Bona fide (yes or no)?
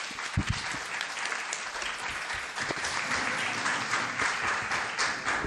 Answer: yes